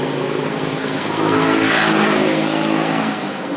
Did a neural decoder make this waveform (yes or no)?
yes